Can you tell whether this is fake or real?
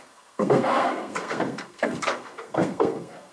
fake